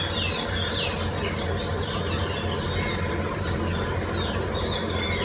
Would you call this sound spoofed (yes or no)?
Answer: no